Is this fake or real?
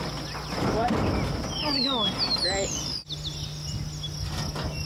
real